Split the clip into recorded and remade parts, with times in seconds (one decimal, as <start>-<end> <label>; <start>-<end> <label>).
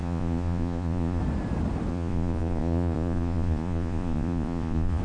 0.0-1.2 remade; 1.2-1.9 recorded; 1.9-5.0 remade